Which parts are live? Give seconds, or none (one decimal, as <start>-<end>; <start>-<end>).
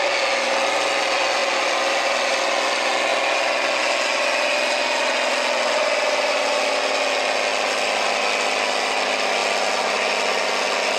0.0-11.0